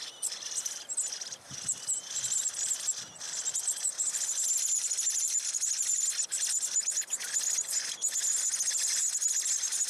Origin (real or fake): real